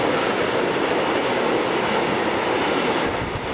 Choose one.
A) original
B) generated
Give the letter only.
A